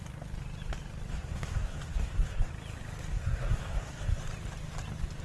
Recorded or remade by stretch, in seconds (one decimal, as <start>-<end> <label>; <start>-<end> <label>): 0.0-1.1 recorded; 1.1-2.5 remade; 2.5-3.1 recorded; 3.1-4.2 remade; 4.2-5.2 recorded